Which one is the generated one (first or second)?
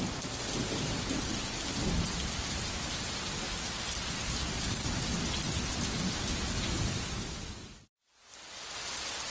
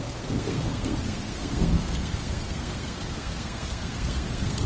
second